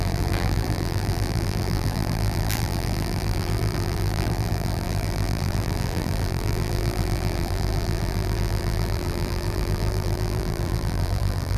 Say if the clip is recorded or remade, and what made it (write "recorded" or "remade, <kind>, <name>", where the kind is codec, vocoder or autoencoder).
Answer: remade, vocoder, BigVGAN v2